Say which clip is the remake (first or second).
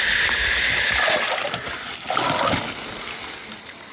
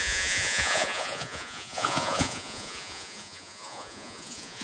second